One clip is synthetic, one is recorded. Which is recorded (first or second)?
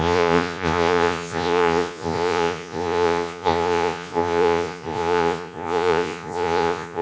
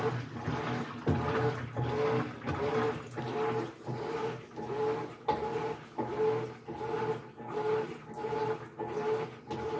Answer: second